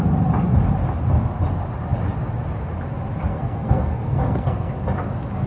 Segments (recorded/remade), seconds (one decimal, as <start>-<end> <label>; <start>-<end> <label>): 0.0-3.3 recorded; 3.3-4.7 remade; 4.7-5.5 recorded